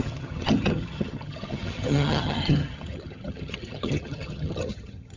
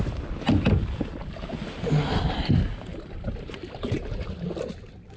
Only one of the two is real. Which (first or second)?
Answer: second